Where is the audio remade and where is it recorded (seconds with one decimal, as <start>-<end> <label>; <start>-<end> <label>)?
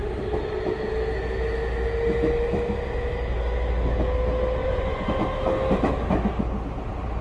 0.0-4.6 recorded; 4.6-5.2 remade; 5.2-7.2 recorded